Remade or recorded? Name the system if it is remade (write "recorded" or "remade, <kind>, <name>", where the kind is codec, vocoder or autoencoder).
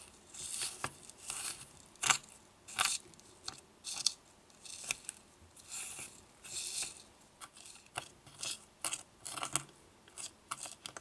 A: recorded